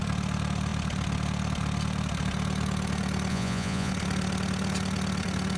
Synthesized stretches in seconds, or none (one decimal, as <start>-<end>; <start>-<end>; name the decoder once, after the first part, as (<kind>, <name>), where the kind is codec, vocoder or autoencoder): 3.3-3.9 (vocoder, Vocos)